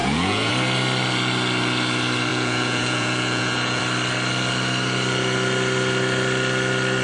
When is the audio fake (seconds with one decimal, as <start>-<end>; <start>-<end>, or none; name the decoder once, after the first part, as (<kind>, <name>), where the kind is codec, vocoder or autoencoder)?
0.0-0.5 (vocoder, Vocos); 2.3-3.8